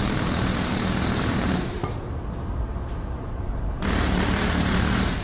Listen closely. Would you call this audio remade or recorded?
remade